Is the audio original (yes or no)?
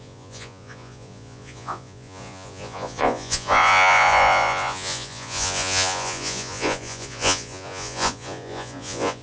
no